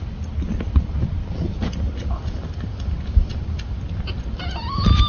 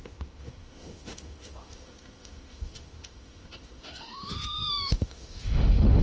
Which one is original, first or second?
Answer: first